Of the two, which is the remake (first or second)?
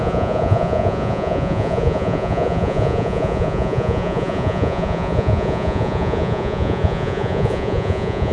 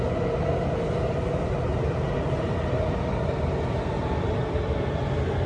first